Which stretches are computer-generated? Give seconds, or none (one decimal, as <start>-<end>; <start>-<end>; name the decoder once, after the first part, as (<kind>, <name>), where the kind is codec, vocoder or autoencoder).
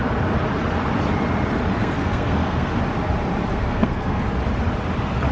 1.8-2.7 (codec, SNAC); 3.5-4.2